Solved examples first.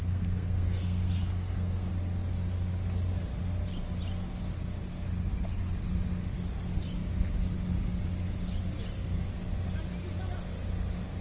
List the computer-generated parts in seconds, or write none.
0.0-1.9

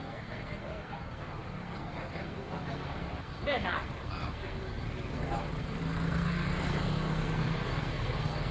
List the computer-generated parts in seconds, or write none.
0.0-8.5